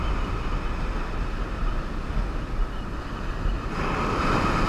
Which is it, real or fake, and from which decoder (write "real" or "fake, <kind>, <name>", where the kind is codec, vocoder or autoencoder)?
real